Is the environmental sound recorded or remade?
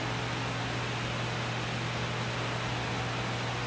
recorded